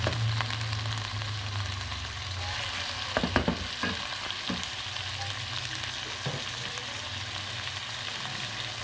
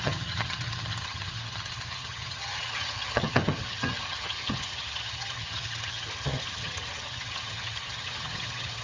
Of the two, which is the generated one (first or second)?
second